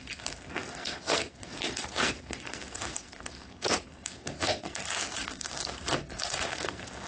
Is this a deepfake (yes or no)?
yes